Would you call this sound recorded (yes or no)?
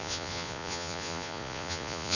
no